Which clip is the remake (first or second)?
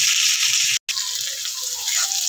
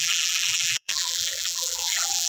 second